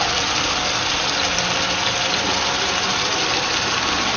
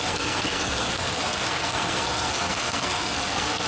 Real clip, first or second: first